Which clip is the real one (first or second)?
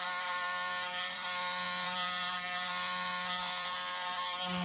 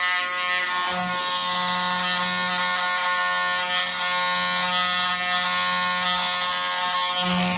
second